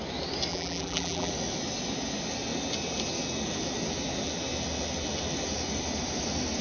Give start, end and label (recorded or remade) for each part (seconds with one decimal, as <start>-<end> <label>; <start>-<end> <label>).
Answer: 0.0-0.5 recorded; 0.5-1.3 remade; 1.3-6.6 recorded